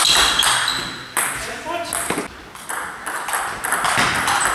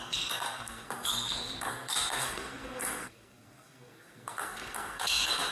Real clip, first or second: first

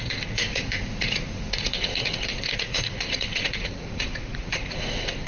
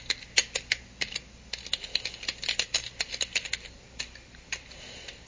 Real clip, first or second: second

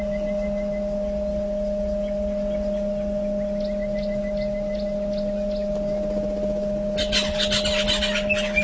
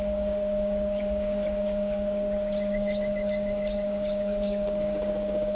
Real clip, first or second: first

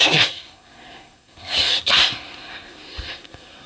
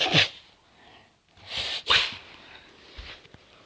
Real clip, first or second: second